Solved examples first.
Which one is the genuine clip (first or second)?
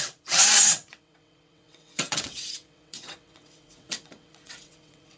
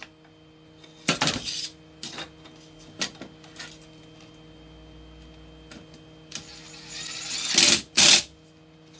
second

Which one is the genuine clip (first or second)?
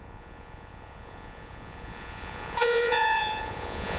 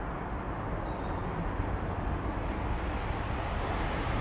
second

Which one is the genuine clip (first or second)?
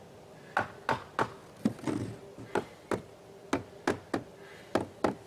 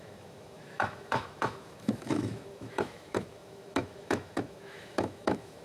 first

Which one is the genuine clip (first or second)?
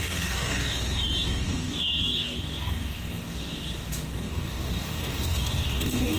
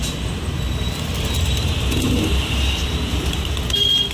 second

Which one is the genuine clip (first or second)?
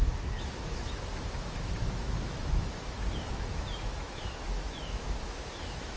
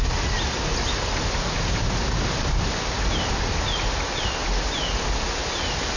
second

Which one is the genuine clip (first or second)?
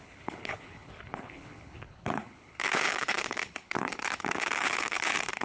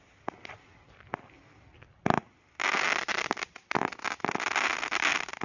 second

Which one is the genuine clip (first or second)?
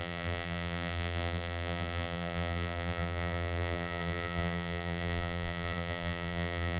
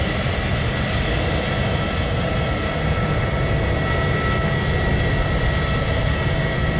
second